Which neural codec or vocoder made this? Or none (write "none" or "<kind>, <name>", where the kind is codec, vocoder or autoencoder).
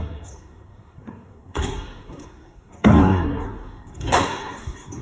codec, SNAC